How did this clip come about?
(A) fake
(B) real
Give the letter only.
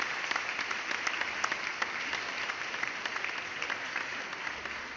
B